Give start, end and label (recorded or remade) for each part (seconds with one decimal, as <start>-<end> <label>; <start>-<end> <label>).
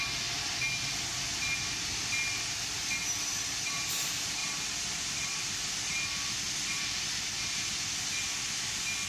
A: 0.0-4.4 recorded; 4.4-7.0 remade; 7.0-9.1 recorded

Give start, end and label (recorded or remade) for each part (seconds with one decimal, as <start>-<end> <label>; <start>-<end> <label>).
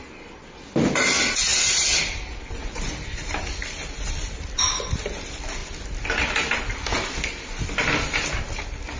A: 0.0-9.0 recorded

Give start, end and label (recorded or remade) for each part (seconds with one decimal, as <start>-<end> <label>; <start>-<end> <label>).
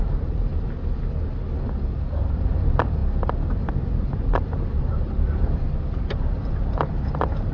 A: 0.0-0.5 remade; 0.5-2.1 recorded; 2.1-3.0 remade; 3.0-3.6 recorded; 3.6-7.5 remade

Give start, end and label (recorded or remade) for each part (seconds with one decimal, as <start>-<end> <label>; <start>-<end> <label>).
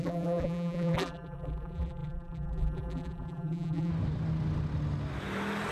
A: 0.0-3.9 remade; 3.9-5.7 recorded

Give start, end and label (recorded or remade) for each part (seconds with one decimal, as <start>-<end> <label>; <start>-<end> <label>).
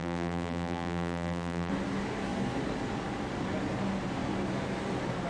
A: 0.0-1.7 remade; 1.7-5.3 recorded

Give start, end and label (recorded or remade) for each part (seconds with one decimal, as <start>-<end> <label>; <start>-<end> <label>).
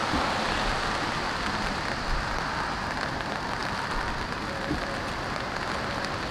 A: 0.0-3.6 recorded; 3.6-5.4 remade; 5.4-6.3 recorded